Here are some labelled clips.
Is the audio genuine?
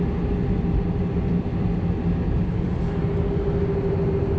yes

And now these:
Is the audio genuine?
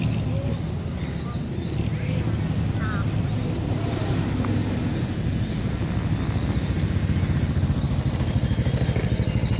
yes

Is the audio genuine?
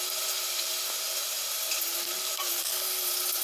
yes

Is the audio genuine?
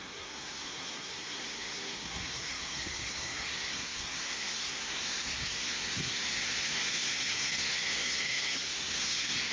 no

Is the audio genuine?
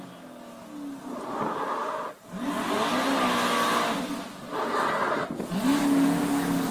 yes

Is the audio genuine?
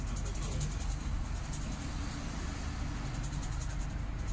yes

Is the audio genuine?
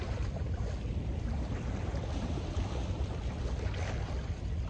yes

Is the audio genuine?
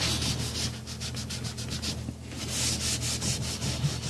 yes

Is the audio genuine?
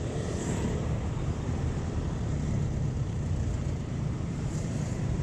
no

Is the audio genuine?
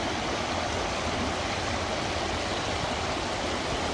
yes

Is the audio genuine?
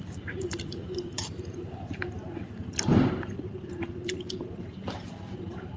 no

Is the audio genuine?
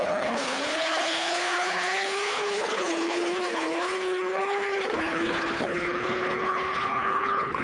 no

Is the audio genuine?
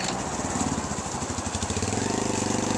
yes